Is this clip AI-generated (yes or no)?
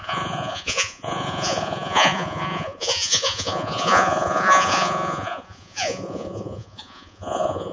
yes